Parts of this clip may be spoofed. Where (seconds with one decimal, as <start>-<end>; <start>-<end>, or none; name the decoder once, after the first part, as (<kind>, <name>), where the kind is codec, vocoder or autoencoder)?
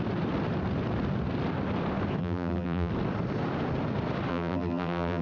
2.2-2.9 (vocoder, BigVGAN v2); 4.3-5.2